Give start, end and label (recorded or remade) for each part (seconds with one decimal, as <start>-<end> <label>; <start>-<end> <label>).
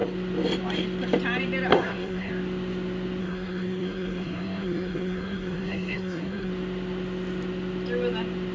0.0-1.7 recorded; 1.7-2.3 remade; 2.3-3.2 recorded; 3.2-6.5 remade; 6.5-8.5 recorded